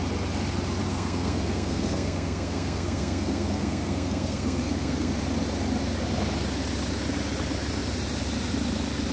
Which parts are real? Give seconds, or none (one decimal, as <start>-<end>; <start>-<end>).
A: 0.0-0.8; 5.1-9.1